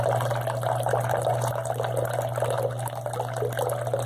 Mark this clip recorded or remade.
recorded